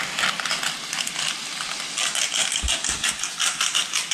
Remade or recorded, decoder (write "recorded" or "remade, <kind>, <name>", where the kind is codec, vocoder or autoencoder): recorded